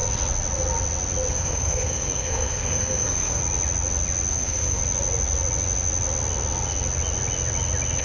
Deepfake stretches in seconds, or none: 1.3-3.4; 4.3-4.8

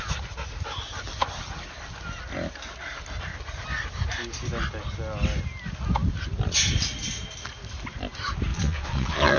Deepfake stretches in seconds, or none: 8.5-9.4

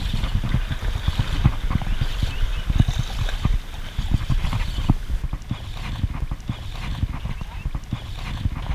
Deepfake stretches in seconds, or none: 6.9-7.6

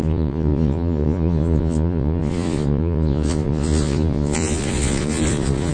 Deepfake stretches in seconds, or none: 0.0-5.7

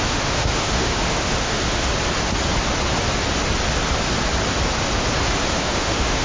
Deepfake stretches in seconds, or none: 0.0-1.9; 5.6-6.2

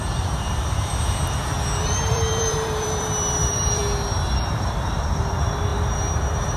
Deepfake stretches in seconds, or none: 0.0-0.9; 1.8-3.8; 4.4-6.6

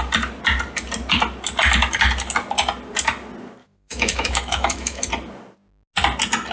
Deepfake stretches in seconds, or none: 3.6-5.1

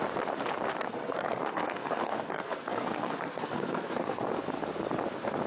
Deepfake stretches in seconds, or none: 0.9-4.2